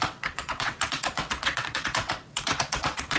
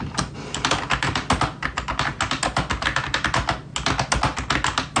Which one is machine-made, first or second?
first